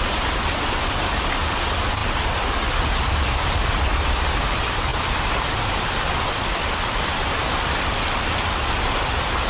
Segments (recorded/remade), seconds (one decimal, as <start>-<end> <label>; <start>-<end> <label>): 0.0-9.5 recorded